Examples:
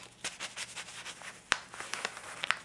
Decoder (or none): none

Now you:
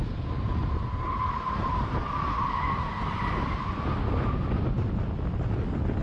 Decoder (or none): none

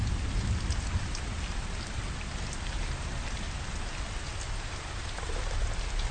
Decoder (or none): none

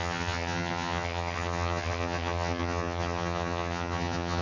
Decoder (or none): vocoder, HiFi-GAN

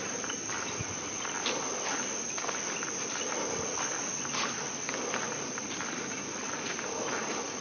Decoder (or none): none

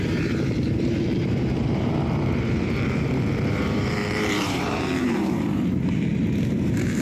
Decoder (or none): vocoder, BigVGAN v2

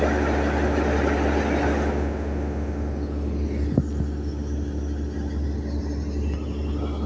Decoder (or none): none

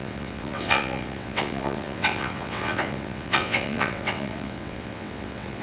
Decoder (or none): vocoder, WaveNeXt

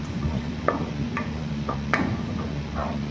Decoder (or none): vocoder, Vocos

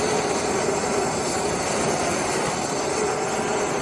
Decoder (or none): none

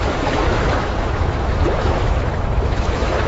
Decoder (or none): autoencoder, DAC-VAE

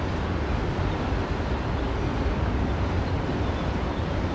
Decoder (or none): none